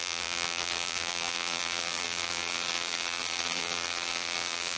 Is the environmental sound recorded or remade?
remade